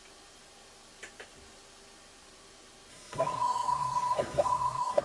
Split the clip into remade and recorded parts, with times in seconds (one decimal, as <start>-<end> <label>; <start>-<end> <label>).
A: 0.0-2.9 recorded; 2.9-5.0 remade